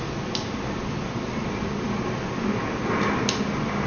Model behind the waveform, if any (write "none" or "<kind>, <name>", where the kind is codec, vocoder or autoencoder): none